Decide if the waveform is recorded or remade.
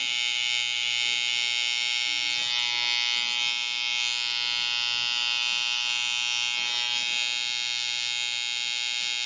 recorded